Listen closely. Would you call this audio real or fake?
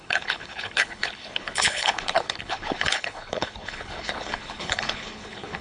fake